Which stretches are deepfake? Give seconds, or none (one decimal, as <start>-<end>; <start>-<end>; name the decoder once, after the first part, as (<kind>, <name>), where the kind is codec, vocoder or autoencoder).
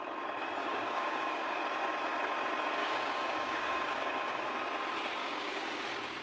0.6-1.6 (codec, DAC); 2.8-4.5; 5.2-5.8